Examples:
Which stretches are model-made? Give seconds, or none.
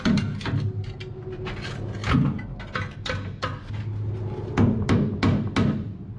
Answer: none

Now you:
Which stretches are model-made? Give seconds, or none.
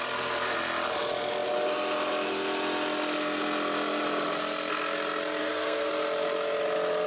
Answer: 5.4-5.9 (codec, SNAC)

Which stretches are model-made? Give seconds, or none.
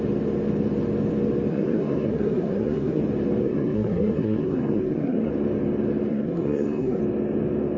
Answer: 1.5-3.0 (codec, SNAC); 3.4-5.3; 6.1-7.0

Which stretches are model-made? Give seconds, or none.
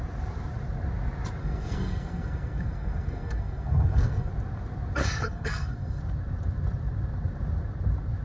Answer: 1.4-4.3 (codec, SNAC); 5.0-6.0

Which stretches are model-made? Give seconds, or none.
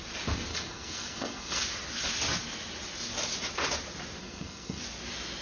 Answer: 0.5-1.6 (codec, SNAC); 4.2-4.8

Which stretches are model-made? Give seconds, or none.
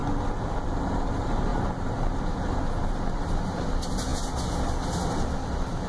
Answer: none